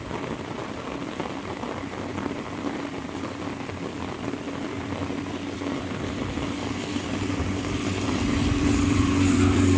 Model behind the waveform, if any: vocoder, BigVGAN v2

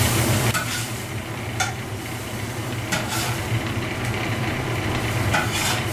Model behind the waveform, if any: vocoder, BigVGAN v2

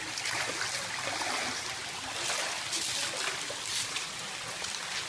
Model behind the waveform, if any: none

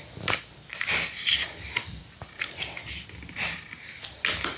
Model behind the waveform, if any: vocoder, BigVGAN v2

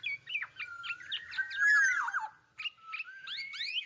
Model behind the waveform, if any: none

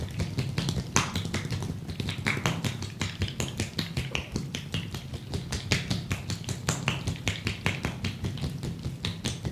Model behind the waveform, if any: none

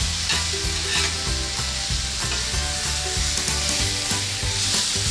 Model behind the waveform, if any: none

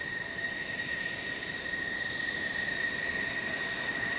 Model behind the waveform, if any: vocoder, BigVGAN v2